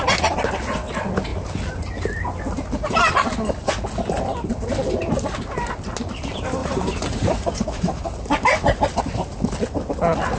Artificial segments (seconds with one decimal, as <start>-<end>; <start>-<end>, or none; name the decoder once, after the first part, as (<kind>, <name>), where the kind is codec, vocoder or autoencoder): 6.6-9.0 (vocoder, BigVGAN v2)